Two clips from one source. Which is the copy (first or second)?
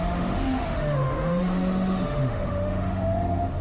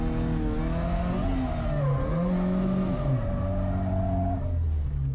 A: first